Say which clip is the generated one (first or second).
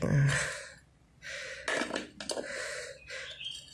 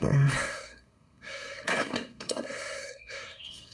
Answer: second